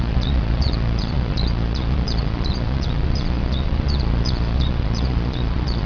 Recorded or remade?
remade